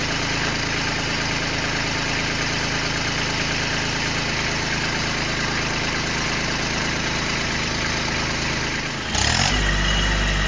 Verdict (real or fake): real